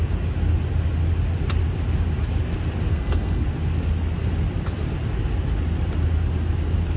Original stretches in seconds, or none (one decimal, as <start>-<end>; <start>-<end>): 0.0-2.9; 3.4-7.0